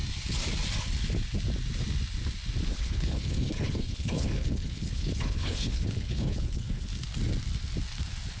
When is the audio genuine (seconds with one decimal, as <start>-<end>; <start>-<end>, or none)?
0.0-2.7; 6.9-8.4